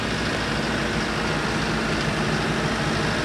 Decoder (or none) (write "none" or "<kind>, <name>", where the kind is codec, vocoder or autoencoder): none